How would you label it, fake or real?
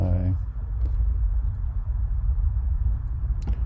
fake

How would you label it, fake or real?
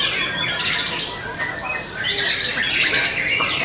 real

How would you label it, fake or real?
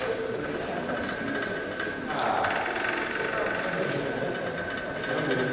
real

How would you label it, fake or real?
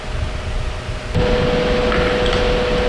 real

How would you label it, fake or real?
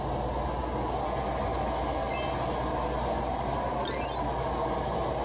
real